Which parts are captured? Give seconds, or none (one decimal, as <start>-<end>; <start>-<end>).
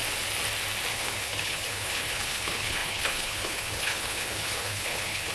0.0-0.9